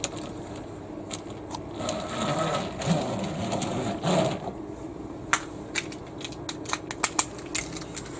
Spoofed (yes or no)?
no